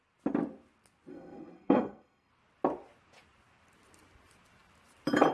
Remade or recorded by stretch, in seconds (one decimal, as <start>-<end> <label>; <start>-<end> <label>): 0.0-1.1 recorded; 1.1-2.3 remade; 2.3-5.3 recorded